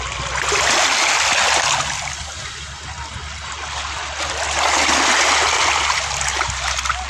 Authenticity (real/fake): real